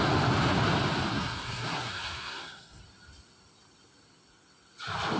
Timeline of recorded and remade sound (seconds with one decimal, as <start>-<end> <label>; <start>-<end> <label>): 0.0-1.1 recorded; 1.1-2.8 remade; 2.8-5.2 recorded